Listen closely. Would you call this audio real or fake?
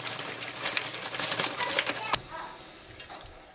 real